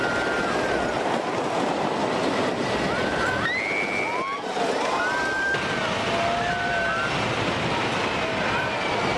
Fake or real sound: real